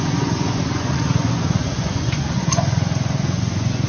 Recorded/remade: remade